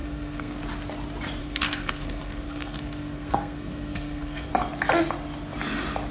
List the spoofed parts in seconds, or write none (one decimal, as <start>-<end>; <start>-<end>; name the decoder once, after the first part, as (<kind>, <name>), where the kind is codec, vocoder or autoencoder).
0.0-0.6 (codec, SNAC); 1.4-4.5